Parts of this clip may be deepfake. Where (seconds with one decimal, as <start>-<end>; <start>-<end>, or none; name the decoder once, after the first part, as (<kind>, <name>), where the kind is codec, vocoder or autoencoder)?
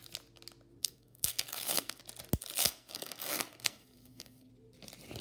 0.8-2.0 (codec, SNAC); 2.6-4.5